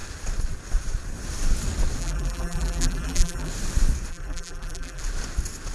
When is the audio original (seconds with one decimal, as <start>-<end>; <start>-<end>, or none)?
0.0-2.0; 3.5-4.1; 5.0-5.7